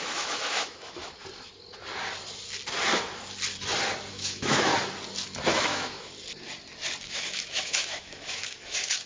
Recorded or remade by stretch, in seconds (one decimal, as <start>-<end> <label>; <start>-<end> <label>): 0.0-1.0 remade; 1.0-4.1 recorded; 4.1-4.7 remade; 4.7-5.5 recorded; 5.5-6.1 remade; 6.1-7.0 recorded; 7.0-9.1 remade